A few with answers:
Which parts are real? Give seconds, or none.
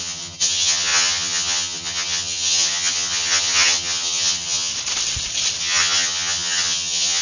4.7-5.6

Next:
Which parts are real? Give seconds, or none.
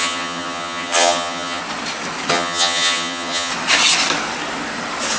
1.6-2.3; 3.5-5.2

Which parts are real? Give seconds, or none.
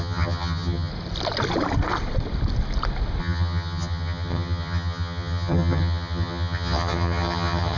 0.9-3.2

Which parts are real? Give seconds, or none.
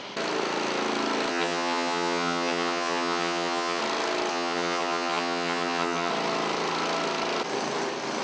0.0-1.3; 3.8-4.3; 6.1-8.2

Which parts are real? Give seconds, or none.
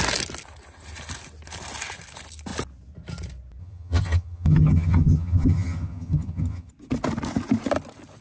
0.0-3.6; 6.7-8.2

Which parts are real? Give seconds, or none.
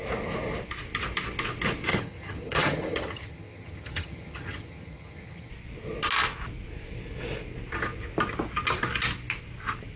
0.0-1.9; 5.5-10.0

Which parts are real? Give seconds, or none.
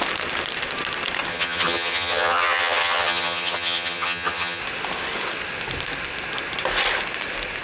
0.0-1.3; 4.6-7.6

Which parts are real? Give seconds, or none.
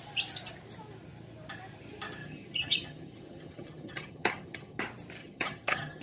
0.0-2.2; 4.8-5.2